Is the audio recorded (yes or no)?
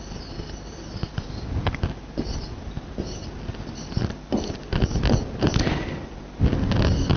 yes